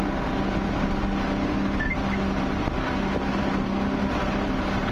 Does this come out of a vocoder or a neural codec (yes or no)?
no